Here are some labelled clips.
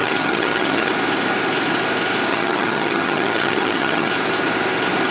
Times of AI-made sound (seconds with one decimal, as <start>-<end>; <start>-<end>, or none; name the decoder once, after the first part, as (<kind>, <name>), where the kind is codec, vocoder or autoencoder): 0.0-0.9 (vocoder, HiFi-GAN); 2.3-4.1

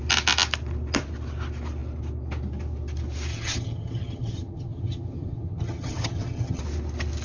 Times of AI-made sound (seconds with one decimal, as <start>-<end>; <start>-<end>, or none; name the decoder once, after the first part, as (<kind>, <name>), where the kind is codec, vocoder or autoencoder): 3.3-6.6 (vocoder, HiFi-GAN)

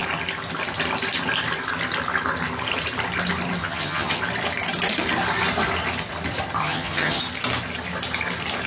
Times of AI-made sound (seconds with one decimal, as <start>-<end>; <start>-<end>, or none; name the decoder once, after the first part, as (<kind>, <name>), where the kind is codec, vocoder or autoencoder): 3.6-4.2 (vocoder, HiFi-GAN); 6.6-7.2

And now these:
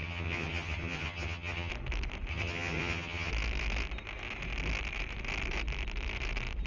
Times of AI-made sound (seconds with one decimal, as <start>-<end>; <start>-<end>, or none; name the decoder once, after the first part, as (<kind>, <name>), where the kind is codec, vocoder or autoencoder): 0.0-1.7 (vocoder, HiFi-GAN); 2.3-3.3

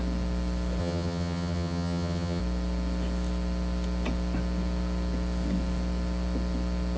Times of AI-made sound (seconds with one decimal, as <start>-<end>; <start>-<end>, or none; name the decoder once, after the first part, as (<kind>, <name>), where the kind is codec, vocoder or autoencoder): 0.8-2.4 (vocoder, HiFi-GAN)

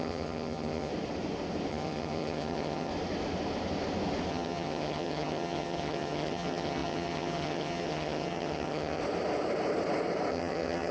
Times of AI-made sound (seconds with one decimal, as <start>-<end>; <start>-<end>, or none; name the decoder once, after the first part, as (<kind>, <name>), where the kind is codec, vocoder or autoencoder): 0.0-0.9 (vocoder, HiFi-GAN); 1.7-2.9; 4.3-9.0; 10.3-10.9

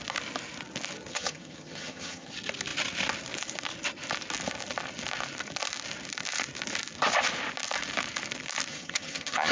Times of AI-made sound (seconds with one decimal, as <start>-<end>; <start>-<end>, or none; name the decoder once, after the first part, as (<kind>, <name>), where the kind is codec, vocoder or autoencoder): 1.1-2.3 (vocoder, HiFi-GAN); 8.7-9.5